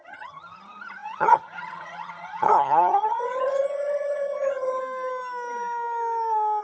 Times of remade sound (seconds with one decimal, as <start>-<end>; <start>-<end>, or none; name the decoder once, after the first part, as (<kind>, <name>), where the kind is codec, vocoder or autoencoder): 0.0-4.8 (vocoder, HiFi-GAN)